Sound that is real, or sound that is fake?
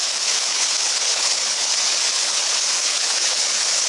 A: fake